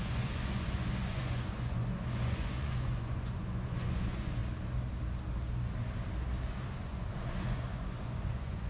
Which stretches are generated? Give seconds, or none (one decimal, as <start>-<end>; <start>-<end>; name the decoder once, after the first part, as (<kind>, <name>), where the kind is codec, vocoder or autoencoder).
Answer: 0.0-4.4 (vocoder, Vocos); 6.8-8.7